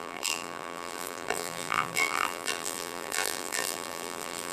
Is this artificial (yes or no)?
yes